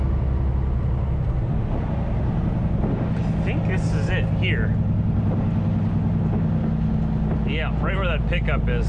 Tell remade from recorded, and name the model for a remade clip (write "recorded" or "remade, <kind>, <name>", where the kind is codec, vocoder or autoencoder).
recorded